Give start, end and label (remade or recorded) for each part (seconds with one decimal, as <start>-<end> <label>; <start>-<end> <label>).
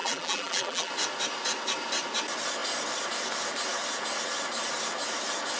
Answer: 0.0-0.9 remade; 0.9-5.6 recorded